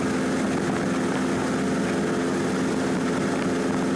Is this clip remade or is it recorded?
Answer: recorded